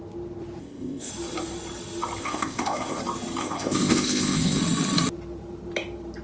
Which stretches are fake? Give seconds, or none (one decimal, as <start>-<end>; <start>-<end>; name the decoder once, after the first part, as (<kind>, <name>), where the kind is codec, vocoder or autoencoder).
0.6-1.1 (codec, ZipCodec); 2.2-3.0; 3.4-4.6

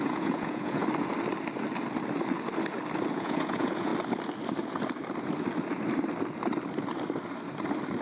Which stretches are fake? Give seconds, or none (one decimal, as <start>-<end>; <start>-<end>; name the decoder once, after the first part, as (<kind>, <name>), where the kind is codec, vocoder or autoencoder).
0.0-0.8 (vocoder, Vocos); 3.1-3.9

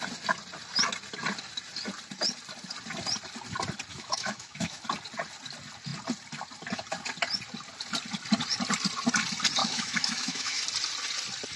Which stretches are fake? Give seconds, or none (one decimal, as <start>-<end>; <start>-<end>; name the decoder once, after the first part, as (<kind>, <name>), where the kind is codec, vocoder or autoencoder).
3.9-4.8 (autoencoder, DAC-VAE); 9.6-10.6

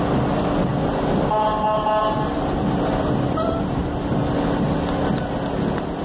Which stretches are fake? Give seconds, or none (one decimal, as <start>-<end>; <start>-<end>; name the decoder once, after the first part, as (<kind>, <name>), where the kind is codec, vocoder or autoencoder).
none

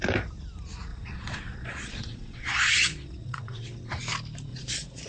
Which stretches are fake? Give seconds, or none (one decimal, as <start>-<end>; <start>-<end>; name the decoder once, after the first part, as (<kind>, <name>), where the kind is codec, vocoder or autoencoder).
0.9-4.0 (vocoder, Vocos); 4.5-5.1

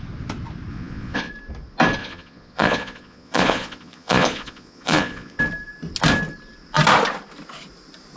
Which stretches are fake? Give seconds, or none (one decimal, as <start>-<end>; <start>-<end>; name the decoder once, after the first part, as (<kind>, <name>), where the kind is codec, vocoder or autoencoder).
0.7-1.3 (vocoder, Vocos); 2.0-5.4